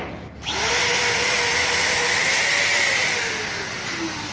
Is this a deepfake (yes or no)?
no